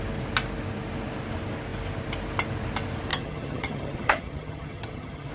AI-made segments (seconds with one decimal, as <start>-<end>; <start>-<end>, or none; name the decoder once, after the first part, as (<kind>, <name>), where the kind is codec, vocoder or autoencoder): 3.1-5.3 (vocoder, HiFi-GAN)